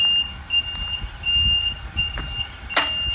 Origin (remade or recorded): recorded